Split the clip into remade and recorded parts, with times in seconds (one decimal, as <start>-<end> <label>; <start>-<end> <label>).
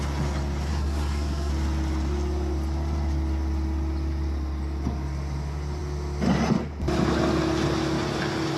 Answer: 0.0-0.7 recorded; 0.7-1.5 remade; 1.5-8.6 recorded